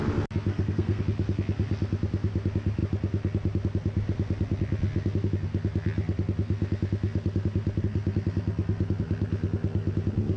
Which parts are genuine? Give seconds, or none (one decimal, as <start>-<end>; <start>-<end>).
0.0-0.5; 1.0-10.4